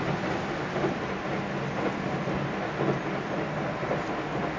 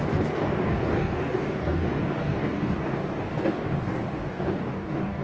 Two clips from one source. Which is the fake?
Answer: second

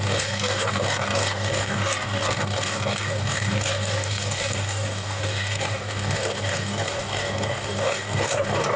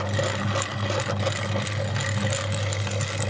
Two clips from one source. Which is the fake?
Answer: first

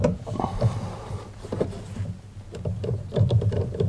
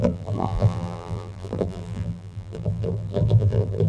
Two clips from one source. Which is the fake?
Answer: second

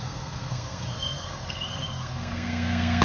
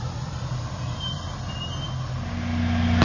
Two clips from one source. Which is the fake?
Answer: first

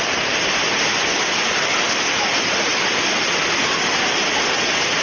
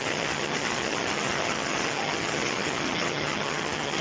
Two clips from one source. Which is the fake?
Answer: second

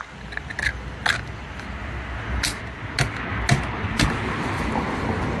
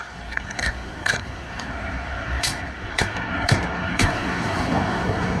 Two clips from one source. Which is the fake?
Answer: second